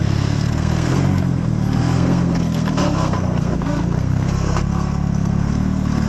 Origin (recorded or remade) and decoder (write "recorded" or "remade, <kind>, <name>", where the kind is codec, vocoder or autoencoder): remade, codec, SNAC